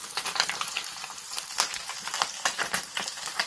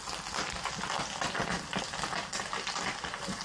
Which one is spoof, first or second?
first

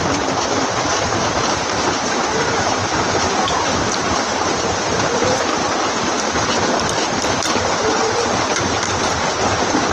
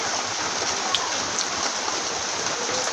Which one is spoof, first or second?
first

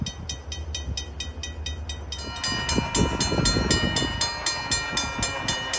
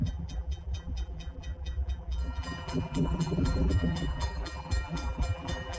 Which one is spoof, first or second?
second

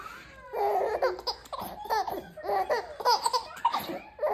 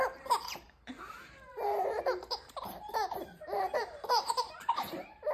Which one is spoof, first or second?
second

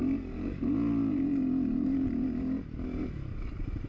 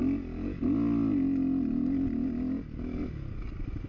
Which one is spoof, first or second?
first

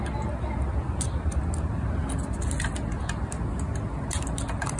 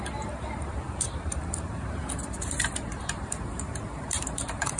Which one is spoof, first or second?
second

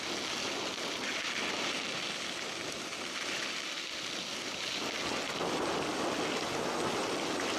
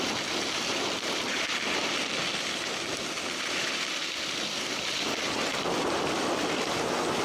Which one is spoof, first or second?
second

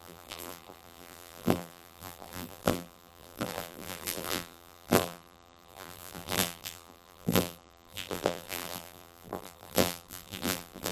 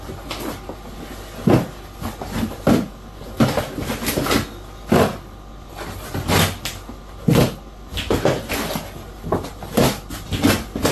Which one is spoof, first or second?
first